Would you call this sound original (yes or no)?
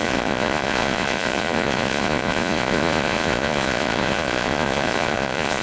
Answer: no